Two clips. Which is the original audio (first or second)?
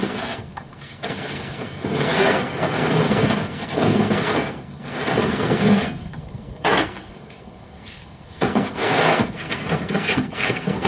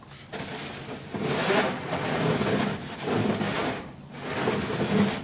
second